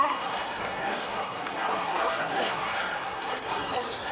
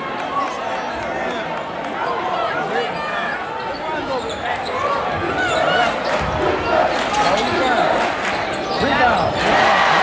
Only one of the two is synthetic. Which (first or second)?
first